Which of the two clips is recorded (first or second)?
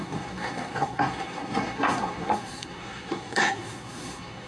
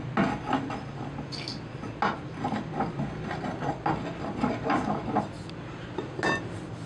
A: second